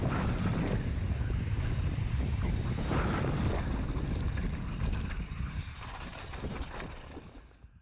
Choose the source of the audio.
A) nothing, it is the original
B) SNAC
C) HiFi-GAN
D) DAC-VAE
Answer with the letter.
A